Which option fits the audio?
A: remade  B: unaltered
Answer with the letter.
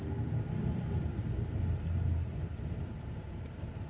A